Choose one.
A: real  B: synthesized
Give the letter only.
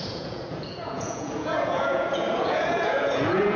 B